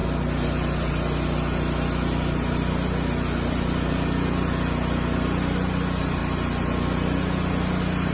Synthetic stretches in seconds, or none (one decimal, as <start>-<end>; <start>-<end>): 0.0-0.9